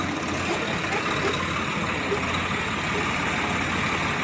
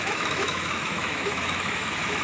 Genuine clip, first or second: first